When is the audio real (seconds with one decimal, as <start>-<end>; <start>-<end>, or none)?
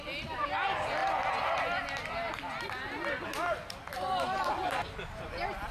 0.0-5.7